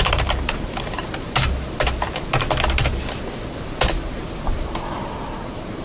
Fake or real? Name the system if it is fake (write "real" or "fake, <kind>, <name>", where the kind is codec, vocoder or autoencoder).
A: real